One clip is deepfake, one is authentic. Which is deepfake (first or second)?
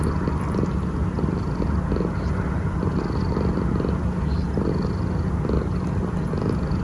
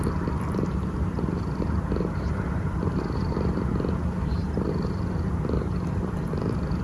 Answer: second